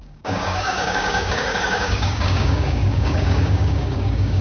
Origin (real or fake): fake